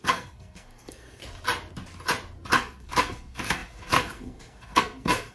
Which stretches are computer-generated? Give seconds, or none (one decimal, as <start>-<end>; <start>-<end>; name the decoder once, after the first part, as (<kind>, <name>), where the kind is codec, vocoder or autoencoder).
0.0-1.2 (codec, SNAC); 2.5-5.3